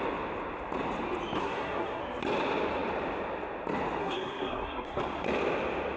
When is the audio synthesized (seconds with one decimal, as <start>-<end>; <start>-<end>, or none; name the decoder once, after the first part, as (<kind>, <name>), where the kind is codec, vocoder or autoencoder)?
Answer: 1.4-2.0 (codec, SNAC); 4.0-5.0